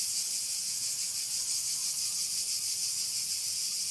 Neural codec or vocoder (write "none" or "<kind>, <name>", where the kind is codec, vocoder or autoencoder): none